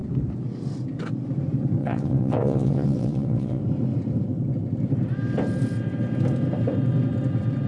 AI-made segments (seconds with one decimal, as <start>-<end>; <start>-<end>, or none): 1.8-3.6